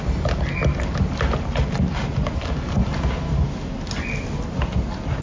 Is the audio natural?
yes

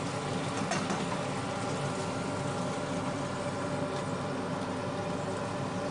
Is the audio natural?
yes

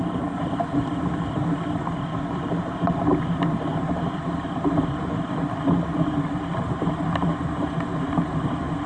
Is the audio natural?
yes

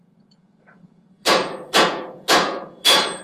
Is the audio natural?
no